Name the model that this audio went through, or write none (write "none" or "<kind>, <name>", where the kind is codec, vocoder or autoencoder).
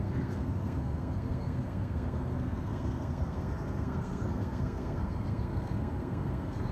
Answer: codec, SNAC